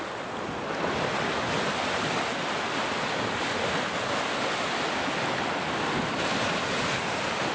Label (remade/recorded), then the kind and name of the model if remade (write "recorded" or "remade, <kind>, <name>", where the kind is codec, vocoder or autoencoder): recorded